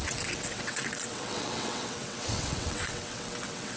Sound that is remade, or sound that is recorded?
remade